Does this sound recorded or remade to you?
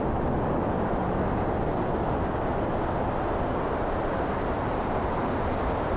recorded